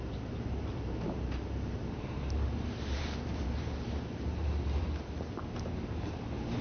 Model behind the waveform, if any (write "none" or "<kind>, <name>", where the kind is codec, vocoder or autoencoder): vocoder, BigVGAN v2